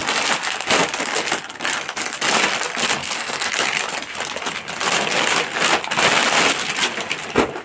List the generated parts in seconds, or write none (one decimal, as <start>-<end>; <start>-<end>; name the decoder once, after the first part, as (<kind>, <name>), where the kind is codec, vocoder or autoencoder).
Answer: 3.0-3.5 (codec, SNAC)